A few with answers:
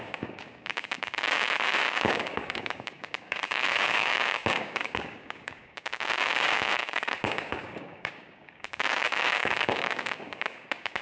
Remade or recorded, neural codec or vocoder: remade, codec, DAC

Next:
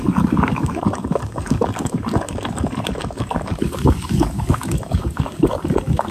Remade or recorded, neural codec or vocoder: remade, codec, DAC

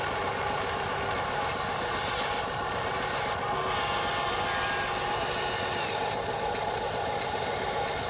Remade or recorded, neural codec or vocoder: recorded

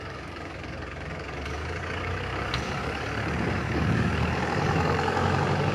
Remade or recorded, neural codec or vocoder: remade, codec, DAC